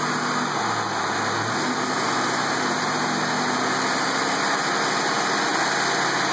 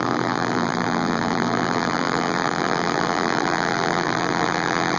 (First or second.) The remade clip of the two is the second